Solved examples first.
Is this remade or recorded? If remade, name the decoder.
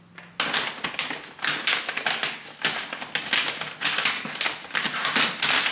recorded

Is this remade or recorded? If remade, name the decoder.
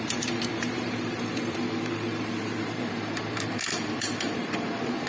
remade, vocoder, BigVGAN v2